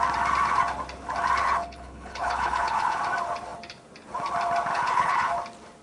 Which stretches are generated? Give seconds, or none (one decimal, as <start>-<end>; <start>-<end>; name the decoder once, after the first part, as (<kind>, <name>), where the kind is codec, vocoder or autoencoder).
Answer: 1.4-3.0 (codec, HILCodec); 4.7-5.3